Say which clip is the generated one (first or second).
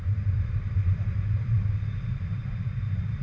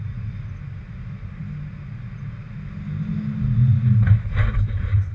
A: first